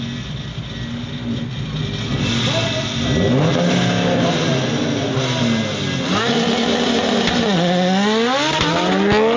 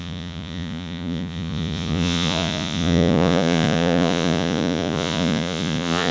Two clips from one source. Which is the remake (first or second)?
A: second